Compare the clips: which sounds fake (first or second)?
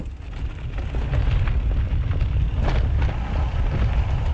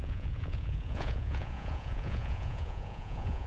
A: second